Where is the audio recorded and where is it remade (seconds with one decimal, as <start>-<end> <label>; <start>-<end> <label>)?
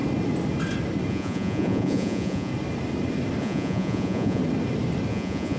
0.0-1.1 recorded; 1.1-2.5 remade; 2.5-3.4 recorded; 3.4-4.4 remade; 4.4-5.1 recorded; 5.1-5.6 remade